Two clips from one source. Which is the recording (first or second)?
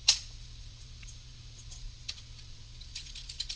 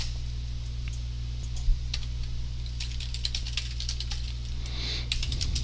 second